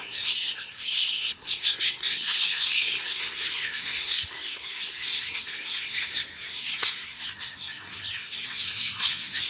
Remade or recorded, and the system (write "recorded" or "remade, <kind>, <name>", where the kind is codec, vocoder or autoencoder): remade, codec, SNAC